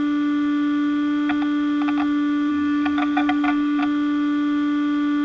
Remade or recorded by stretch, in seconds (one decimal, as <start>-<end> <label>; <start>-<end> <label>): 0.0-2.5 recorded; 2.5-3.8 remade; 3.8-5.2 recorded